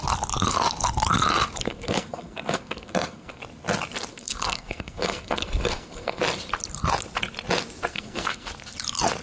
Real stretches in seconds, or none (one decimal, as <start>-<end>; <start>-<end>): 0.0-1.7; 3.4-4.1; 6.2-7.9; 8.5-9.2